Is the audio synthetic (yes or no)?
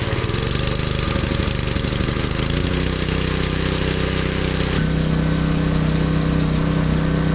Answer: no